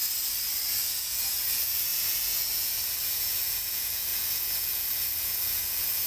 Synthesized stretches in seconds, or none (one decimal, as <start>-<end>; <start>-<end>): 0.8-6.1